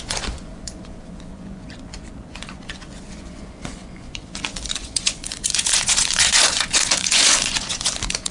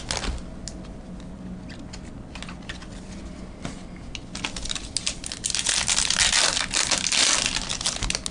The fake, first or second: first